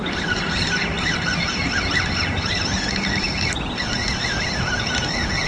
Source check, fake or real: real